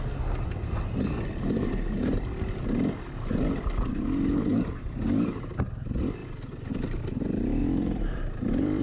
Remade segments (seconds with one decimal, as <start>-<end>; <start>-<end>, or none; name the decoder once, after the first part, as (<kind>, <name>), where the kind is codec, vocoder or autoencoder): 4.5-5.0 (vocoder, BigVGAN v2); 7.6-8.8